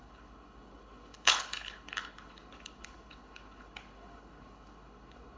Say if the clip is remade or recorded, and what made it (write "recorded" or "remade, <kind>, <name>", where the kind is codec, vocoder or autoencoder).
remade, codec, HILCodec